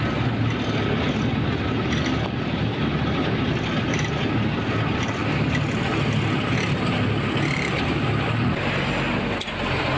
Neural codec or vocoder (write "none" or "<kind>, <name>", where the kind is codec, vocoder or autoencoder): none